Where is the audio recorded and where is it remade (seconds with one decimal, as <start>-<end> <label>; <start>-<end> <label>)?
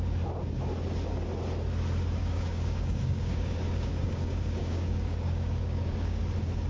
0.0-2.2 recorded; 2.2-6.2 remade; 6.2-6.7 recorded